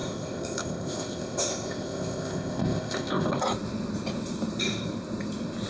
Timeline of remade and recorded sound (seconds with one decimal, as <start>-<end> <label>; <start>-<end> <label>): 0.0-3.4 remade; 3.4-5.7 recorded